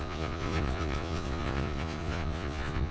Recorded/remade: remade